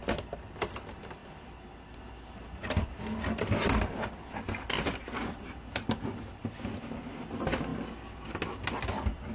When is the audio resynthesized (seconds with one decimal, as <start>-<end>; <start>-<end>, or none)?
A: none